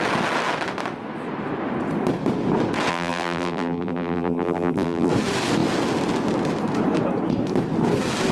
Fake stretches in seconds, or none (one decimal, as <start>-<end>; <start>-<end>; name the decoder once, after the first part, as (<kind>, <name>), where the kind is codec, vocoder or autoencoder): 2.9-5.1 (vocoder, BigVGAN v2)